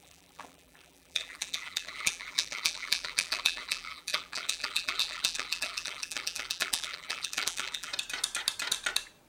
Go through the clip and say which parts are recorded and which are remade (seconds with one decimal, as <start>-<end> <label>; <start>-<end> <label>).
0.0-7.9 remade; 7.9-9.3 recorded